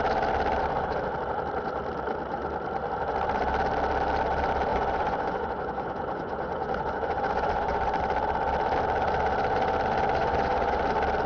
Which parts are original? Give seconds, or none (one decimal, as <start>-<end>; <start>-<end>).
0.0-4.7; 8.0-10.2; 10.8-11.3